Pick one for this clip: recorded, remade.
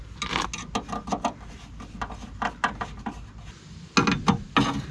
recorded